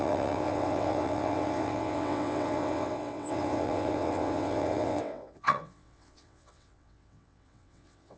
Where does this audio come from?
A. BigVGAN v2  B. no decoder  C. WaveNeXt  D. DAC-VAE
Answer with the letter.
C